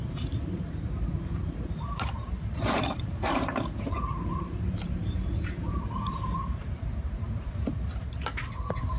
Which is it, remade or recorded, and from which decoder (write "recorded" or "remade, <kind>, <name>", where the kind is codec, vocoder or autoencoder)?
remade, vocoder, BigVGAN v2